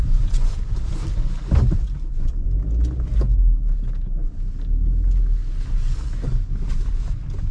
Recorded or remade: recorded